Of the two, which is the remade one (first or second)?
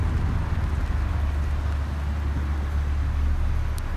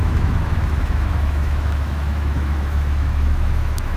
second